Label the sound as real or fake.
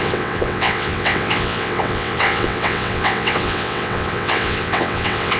fake